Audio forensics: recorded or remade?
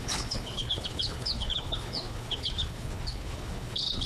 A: remade